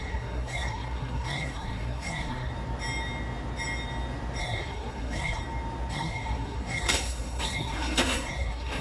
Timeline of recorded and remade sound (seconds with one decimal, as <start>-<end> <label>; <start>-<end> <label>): 0.0-2.5 remade; 2.5-4.4 recorded; 4.4-5.4 remade; 5.4-5.9 recorded; 5.9-8.8 remade